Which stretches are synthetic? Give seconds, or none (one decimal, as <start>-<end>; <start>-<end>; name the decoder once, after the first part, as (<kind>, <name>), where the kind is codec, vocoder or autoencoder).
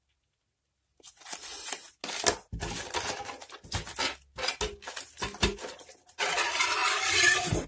6.8-7.7 (vocoder, BigVGAN v2)